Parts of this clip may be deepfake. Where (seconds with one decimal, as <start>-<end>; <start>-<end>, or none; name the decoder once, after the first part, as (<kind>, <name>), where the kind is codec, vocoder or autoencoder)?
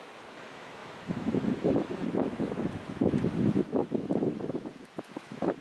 0.0-5.6 (autoencoder, DAC-VAE)